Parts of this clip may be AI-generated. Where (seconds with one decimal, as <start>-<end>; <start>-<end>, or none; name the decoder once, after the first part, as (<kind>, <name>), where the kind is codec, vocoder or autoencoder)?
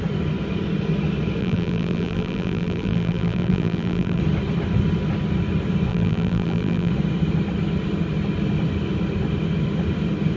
1.4-4.2 (vocoder, BigVGAN v2); 5.9-6.9